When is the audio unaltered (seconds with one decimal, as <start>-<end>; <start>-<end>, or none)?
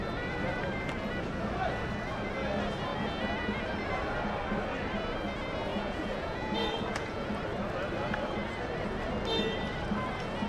0.0-5.7; 7.3-10.5